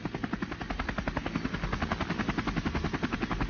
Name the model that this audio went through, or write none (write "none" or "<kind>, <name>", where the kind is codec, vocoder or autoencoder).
none